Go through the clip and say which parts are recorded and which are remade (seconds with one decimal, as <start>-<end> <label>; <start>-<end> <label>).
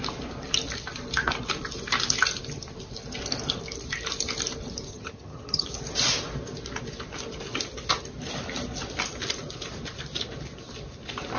0.0-4.9 recorded; 4.9-5.7 remade; 5.7-11.4 recorded